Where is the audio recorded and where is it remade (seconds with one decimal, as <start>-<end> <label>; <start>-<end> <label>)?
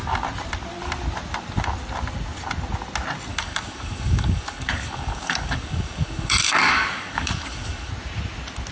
0.0-3.3 recorded; 3.3-7.9 remade; 7.9-8.7 recorded